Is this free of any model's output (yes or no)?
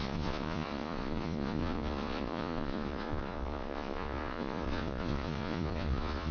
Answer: no